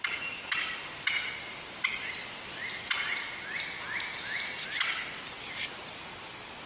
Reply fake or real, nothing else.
real